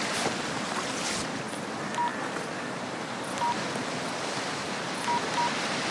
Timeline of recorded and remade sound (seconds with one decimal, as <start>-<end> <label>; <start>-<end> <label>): 0.0-2.1 recorded; 2.1-3.7 remade; 3.7-5.9 recorded